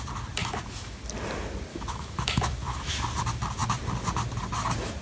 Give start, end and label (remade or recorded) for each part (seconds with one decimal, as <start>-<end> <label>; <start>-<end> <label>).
0.0-0.4 recorded; 0.4-1.0 remade; 1.0-1.7 recorded; 1.7-2.9 remade; 2.9-5.0 recorded